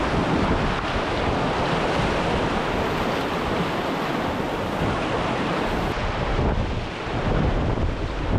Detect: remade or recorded recorded